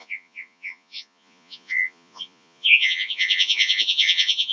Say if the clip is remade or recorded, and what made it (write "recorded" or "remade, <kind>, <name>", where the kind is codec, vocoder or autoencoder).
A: remade, vocoder, Vocos